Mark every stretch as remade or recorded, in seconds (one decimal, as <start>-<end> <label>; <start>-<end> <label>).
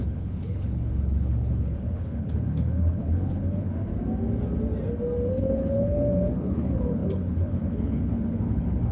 0.0-3.9 remade; 3.9-5.3 recorded; 5.3-8.9 remade